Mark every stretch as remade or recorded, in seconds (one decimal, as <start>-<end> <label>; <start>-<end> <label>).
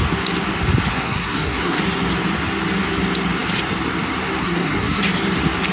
0.0-0.9 recorded; 0.9-1.8 remade; 1.8-4.4 recorded; 4.4-5.0 remade; 5.0-5.7 recorded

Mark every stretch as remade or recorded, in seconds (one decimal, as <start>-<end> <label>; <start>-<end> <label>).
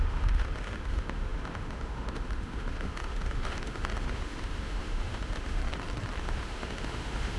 0.0-5.6 remade; 5.6-6.2 recorded; 6.2-7.4 remade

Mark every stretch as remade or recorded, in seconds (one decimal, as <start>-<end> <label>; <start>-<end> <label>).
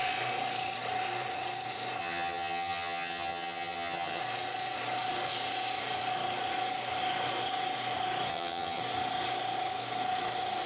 0.0-2.0 recorded; 2.0-4.2 remade; 4.2-8.3 recorded; 8.3-8.8 remade; 8.8-10.7 recorded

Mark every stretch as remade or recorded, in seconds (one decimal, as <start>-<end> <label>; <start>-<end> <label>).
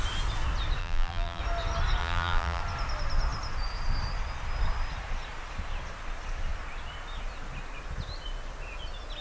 0.0-0.8 recorded; 0.8-1.4 remade; 1.4-2.0 recorded; 2.0-2.6 remade; 2.6-9.2 recorded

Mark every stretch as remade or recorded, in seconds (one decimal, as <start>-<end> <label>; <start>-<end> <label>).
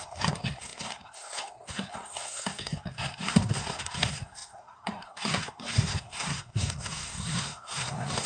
0.0-8.3 remade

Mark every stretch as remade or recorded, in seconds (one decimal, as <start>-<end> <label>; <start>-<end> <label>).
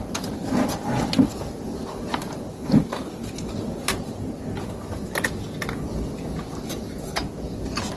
0.0-8.0 recorded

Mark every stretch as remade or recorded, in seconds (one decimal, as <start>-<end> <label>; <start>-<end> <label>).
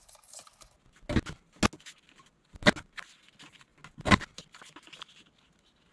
0.0-5.9 recorded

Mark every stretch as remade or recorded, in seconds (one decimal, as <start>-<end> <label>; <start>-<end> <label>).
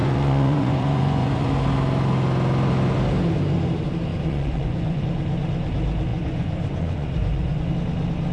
0.0-1.5 remade; 1.5-4.1 recorded; 4.1-5.0 remade; 5.0-6.1 recorded; 6.1-7.7 remade; 7.7-8.3 recorded